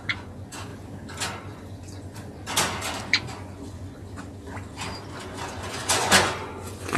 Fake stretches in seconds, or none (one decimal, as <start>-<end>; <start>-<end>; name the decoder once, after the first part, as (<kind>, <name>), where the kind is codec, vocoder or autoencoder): 0.0-0.7 (vocoder, Vocos); 1.5-2.4; 3.0-4.0; 5.1-7.0